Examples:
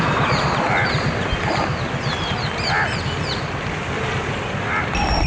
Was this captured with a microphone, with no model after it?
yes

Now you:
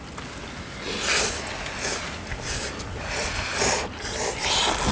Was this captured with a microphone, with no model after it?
yes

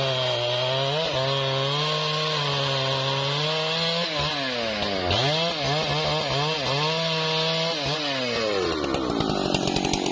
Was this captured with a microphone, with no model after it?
yes